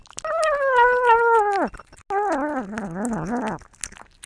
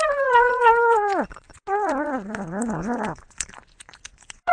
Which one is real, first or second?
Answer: first